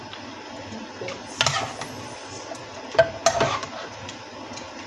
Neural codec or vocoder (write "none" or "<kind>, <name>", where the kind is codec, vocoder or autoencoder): none